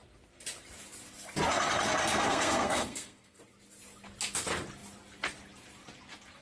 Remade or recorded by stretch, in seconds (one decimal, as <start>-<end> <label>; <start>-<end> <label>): 0.0-2.0 recorded; 2.0-3.4 remade; 3.4-6.4 recorded